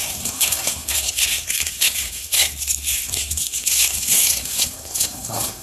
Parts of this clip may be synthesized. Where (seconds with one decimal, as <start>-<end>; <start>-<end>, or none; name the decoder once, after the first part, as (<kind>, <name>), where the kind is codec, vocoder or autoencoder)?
0.0-5.6 (codec, SNAC)